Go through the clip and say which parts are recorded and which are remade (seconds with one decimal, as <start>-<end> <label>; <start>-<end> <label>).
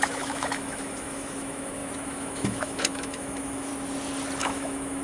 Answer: 0.0-3.7 remade; 3.7-4.4 recorded; 4.4-5.0 remade